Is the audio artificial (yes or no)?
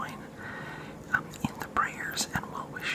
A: no